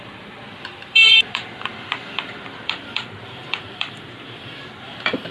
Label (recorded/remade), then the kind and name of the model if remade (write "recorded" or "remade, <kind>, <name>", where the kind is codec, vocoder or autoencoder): remade, vocoder, BigVGAN v2